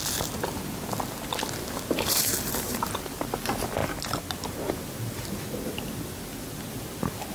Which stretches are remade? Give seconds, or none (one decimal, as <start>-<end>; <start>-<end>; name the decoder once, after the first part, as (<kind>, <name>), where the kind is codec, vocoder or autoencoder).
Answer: 1.6-2.9 (vocoder, BigVGAN v2)